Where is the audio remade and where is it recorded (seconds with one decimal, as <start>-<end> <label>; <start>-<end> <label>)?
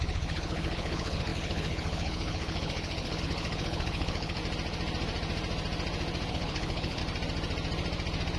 0.0-4.4 remade; 4.4-6.3 recorded; 6.3-7.0 remade; 7.0-8.4 recorded